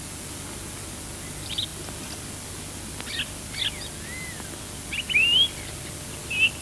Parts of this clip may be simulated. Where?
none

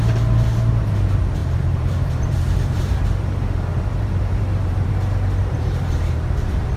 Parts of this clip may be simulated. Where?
1.4-4.9 (vocoder, BigVGAN v2); 5.4-6.8